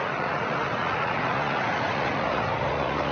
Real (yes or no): no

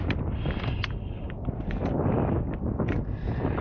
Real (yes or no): yes